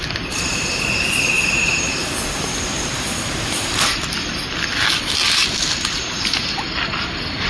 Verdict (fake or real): real